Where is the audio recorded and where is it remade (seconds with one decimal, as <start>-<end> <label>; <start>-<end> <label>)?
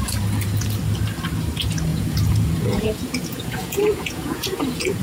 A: 0.0-1.9 recorded; 1.9-5.0 remade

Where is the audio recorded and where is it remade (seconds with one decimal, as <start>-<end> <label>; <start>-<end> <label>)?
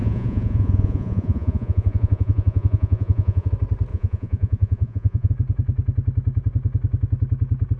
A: 0.0-3.5 remade; 3.5-3.9 recorded; 3.9-5.3 remade; 5.3-7.8 recorded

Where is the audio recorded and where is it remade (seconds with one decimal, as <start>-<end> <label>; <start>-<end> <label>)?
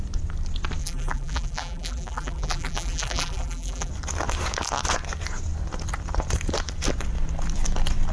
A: 0.0-0.8 recorded; 0.8-3.9 remade; 3.9-8.1 recorded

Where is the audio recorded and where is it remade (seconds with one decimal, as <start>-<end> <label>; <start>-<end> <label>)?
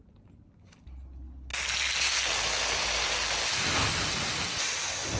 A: 0.0-5.2 recorded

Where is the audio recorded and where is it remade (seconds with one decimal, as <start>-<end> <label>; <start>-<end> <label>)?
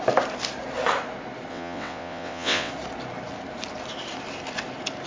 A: 0.0-1.5 recorded; 1.5-2.7 remade; 2.7-5.1 recorded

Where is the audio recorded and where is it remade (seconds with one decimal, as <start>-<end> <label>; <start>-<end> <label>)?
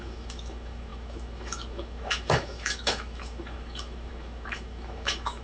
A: 0.0-5.4 remade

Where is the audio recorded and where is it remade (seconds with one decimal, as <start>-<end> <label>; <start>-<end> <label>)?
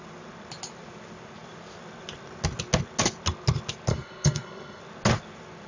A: 0.0-3.9 recorded; 3.9-4.8 remade; 4.8-5.7 recorded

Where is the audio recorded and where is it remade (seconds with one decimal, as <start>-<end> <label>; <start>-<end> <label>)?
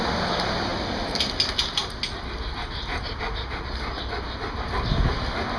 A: 0.0-5.6 recorded